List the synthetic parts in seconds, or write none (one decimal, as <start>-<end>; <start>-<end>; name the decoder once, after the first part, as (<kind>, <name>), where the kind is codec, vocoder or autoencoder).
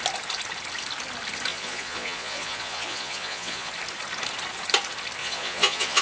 1.5-3.7 (vocoder, Vocos); 5.2-6.0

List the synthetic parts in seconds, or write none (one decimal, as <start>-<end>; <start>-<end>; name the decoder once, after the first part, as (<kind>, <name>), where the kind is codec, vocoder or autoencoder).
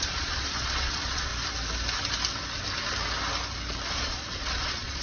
0.0-1.3 (vocoder, Vocos); 3.9-5.0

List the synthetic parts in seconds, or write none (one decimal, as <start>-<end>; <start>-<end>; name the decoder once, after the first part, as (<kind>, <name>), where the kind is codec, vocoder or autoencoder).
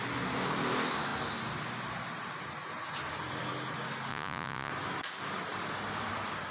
4.1-4.7 (vocoder, Vocos)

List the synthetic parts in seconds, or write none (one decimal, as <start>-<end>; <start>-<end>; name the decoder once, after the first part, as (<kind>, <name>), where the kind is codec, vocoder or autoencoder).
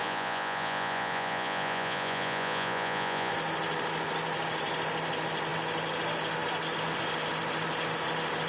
0.0-3.3 (vocoder, Vocos)